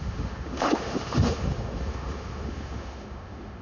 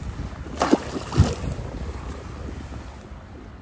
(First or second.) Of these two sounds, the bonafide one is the second